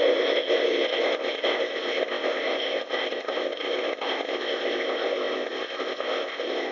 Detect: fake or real fake